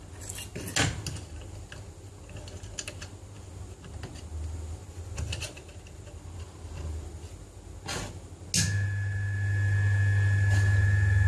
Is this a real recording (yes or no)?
yes